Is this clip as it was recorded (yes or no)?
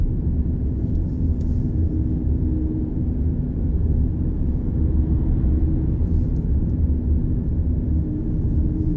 no